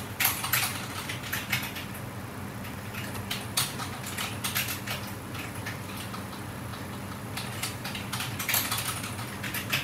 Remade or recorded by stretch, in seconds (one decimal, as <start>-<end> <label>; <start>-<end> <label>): 0.0-9.8 recorded